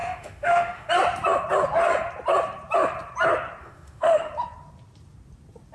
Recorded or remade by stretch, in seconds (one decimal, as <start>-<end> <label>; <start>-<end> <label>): 0.0-0.9 remade; 0.9-3.6 recorded; 3.6-4.3 remade; 4.3-5.7 recorded